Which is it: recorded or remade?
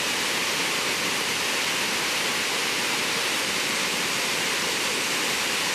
recorded